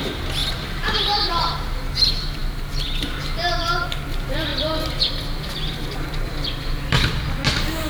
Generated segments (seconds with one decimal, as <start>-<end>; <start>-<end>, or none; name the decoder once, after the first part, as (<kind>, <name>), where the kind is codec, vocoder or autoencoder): none